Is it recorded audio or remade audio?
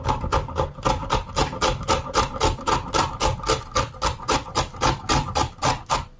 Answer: recorded